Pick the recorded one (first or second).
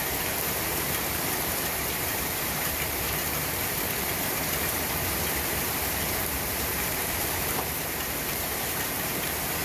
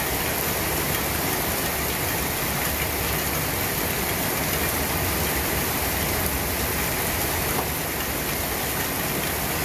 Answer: second